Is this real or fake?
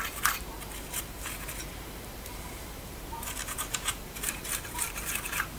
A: fake